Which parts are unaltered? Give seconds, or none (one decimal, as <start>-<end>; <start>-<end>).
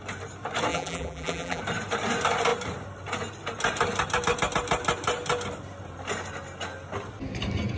0.0-0.7; 1.6-7.8